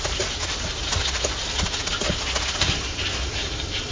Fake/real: real